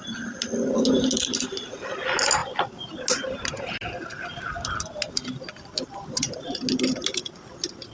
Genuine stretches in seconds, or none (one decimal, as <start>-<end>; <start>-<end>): 0.0-7.9